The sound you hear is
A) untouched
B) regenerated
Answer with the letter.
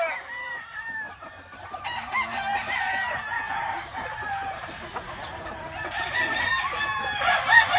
B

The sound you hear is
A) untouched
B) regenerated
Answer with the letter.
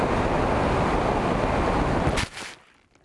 A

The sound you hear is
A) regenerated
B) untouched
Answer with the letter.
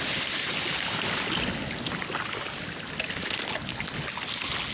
B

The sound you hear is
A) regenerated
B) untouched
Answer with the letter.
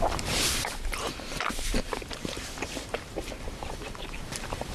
A